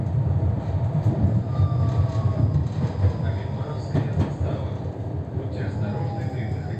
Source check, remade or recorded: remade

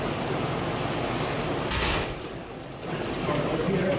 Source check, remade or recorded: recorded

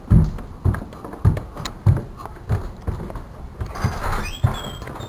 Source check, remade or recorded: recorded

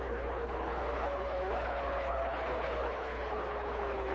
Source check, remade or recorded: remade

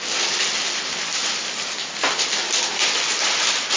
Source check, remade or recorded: recorded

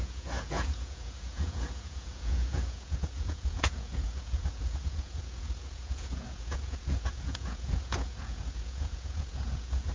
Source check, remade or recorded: remade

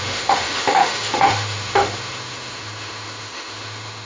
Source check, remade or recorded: remade